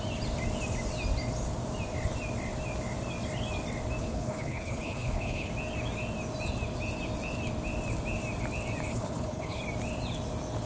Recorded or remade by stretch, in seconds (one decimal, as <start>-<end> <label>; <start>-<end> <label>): 0.0-4.0 recorded; 4.0-5.5 remade; 5.5-8.9 recorded; 8.9-9.6 remade; 9.6-10.7 recorded